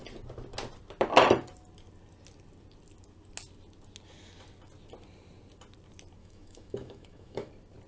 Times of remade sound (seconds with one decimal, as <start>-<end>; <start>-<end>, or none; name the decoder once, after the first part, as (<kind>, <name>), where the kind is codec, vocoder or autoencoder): 6.2-7.5 (autoencoder, DAC-VAE)